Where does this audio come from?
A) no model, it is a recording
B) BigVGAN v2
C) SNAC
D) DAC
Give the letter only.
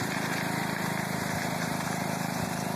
B